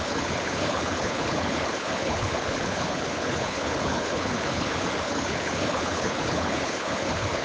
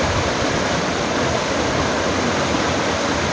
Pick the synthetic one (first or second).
first